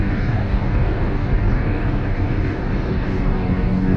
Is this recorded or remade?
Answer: remade